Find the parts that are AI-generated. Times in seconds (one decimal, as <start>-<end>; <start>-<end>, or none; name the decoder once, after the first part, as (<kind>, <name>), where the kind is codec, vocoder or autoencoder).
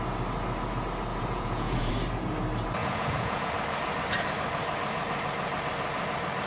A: 1.1-1.9 (vocoder, Vocos); 2.8-3.5